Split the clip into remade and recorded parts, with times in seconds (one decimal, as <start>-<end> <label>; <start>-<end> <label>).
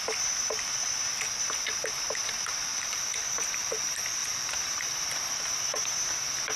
0.0-2.7 recorded; 2.7-3.3 remade; 3.3-4.2 recorded; 4.2-5.2 remade; 5.2-6.6 recorded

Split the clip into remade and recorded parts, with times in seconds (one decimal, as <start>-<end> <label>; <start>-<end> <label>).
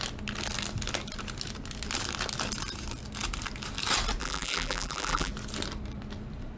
0.0-4.2 recorded; 4.2-5.3 remade; 5.3-6.6 recorded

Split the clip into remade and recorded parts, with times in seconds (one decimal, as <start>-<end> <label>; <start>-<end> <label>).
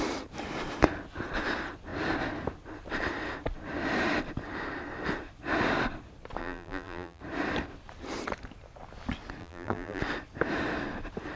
0.0-6.4 recorded; 6.4-7.2 remade; 7.2-9.4 recorded; 9.4-10.0 remade; 10.0-11.4 recorded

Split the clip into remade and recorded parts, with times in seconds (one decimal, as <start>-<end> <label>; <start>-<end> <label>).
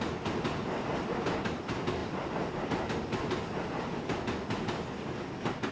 0.0-5.7 remade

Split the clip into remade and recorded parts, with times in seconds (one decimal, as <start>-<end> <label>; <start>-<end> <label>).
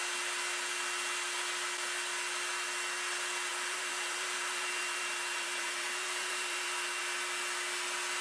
0.0-3.5 recorded; 3.5-7.0 remade; 7.0-8.2 recorded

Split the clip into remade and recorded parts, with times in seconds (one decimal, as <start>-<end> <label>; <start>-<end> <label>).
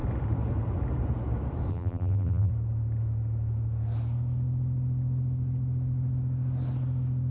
0.0-1.7 recorded; 1.7-2.5 remade; 2.5-7.3 recorded